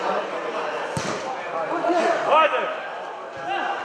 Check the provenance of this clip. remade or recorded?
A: recorded